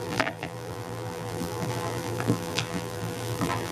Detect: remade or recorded remade